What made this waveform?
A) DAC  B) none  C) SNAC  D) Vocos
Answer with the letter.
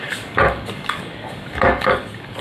A